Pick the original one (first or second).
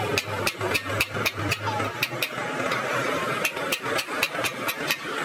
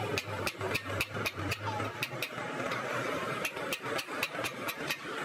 first